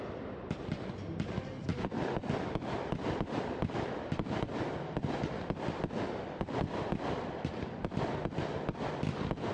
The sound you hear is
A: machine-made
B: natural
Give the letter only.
B